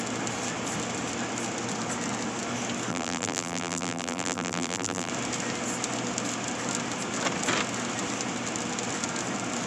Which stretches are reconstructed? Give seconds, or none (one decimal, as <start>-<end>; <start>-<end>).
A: 2.9-5.1